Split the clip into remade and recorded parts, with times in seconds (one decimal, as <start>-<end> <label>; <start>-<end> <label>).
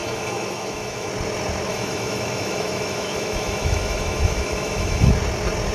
0.0-1.1 remade; 1.1-1.7 recorded; 1.7-5.1 remade; 5.1-5.7 recorded